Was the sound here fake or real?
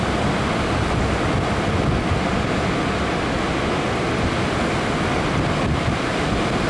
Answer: real